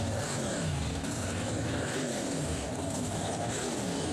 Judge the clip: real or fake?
fake